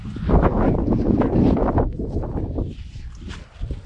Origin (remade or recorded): recorded